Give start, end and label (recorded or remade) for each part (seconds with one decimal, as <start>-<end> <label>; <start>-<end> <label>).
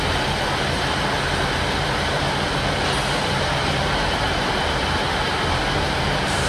0.0-3.2 recorded; 3.2-6.5 remade